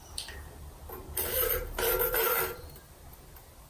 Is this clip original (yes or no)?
yes